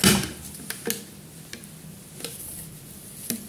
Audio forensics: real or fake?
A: real